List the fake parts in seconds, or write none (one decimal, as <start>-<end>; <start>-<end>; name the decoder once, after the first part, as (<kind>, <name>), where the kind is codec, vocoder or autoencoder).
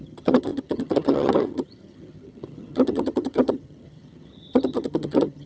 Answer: 0.0-5.5 (vocoder, HiFi-GAN)